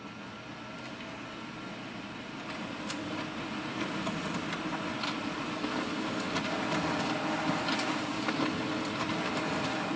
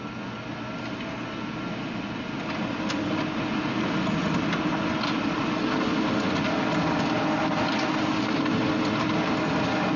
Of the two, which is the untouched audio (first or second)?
second